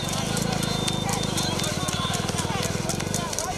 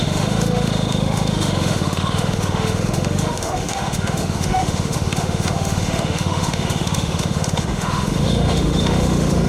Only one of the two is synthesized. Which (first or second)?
second